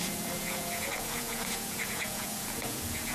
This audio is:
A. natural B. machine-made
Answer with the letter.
B